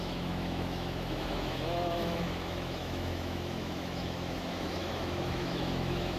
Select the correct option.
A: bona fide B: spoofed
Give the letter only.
B